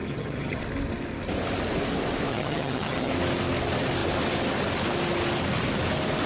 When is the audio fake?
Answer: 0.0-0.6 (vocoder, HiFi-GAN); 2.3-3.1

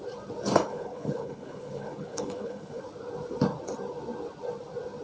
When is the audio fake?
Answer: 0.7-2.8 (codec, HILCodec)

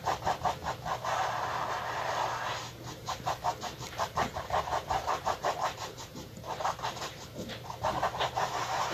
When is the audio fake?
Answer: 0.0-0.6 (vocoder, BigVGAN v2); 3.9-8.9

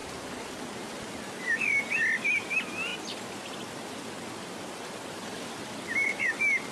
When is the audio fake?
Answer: none

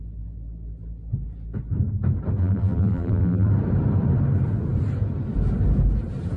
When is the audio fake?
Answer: 2.4-3.5 (vocoder, BigVGAN v2)

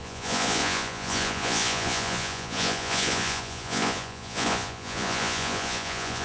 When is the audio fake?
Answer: 0.0-6.2 (vocoder, Vocos)